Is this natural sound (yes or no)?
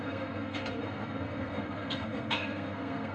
no